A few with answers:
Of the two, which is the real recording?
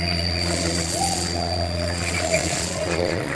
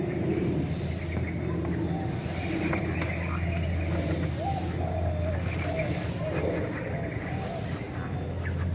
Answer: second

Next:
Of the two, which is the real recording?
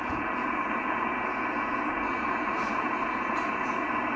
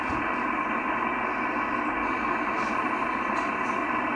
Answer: second